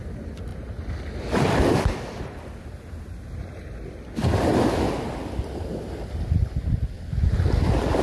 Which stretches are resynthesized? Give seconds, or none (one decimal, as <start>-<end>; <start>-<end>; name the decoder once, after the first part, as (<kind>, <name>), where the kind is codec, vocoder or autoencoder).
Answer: none